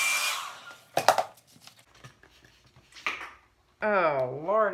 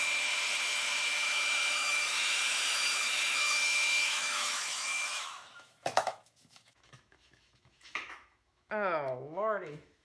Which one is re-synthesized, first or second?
second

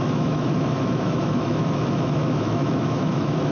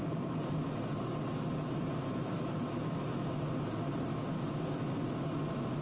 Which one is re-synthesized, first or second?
first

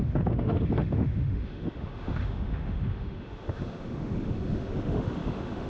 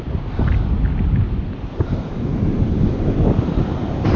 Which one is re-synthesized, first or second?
first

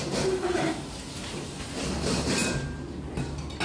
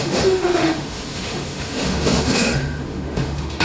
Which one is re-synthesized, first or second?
second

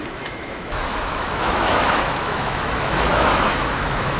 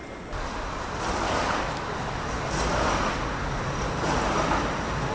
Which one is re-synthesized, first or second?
first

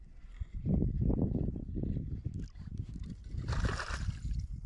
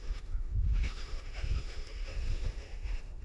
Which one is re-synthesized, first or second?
second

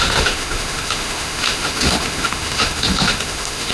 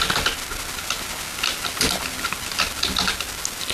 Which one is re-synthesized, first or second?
first